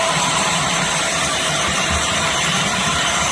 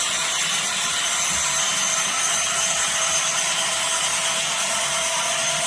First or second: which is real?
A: second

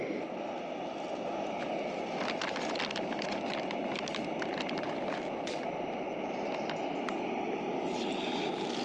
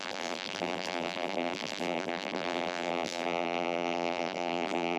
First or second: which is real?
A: first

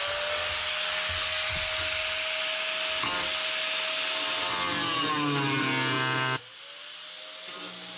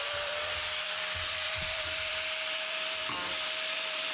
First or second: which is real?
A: first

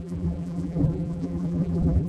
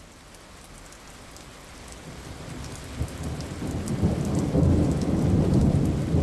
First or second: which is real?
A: second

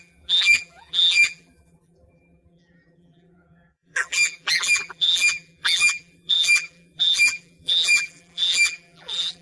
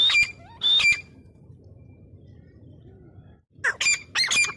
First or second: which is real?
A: second